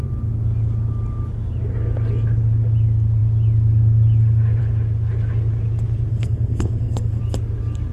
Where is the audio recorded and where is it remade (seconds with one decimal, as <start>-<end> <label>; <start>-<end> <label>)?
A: 0.0-6.1 recorded; 6.1-7.2 remade; 7.2-7.9 recorded

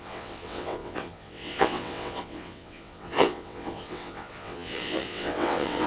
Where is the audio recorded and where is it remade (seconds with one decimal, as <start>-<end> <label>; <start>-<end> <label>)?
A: 0.0-5.9 remade